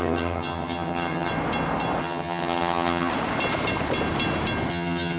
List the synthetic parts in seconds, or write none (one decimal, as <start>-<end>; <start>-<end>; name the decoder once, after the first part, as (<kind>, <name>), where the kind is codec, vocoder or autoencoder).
0.0-1.3 (vocoder, HiFi-GAN); 2.0-3.1; 4.7-5.2